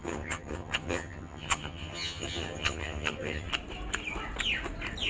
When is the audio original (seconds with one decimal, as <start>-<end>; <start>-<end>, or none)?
3.5-5.1